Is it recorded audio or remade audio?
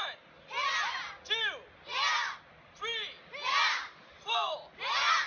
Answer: recorded